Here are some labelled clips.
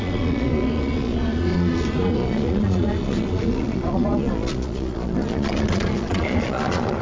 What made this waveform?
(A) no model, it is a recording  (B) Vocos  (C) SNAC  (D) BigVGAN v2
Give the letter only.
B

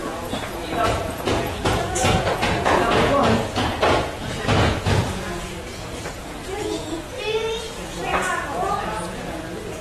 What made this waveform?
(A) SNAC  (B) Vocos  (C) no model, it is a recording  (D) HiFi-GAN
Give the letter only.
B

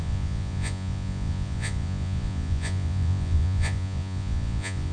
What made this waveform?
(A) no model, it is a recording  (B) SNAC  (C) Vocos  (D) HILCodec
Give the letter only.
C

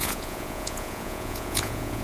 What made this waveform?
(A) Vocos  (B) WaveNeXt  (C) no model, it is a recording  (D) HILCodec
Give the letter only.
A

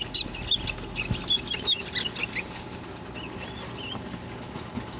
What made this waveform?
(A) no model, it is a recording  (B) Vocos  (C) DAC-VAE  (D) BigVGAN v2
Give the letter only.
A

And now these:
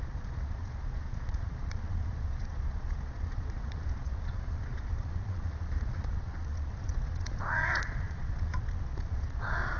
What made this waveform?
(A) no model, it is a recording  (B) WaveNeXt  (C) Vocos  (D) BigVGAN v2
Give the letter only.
C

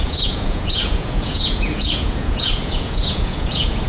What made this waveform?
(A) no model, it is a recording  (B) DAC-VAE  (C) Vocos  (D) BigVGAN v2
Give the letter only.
C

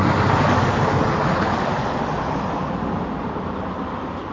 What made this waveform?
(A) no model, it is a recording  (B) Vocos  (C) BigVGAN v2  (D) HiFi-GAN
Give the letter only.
A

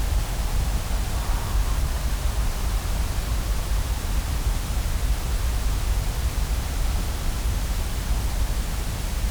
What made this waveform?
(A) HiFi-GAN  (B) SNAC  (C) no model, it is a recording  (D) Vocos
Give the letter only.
C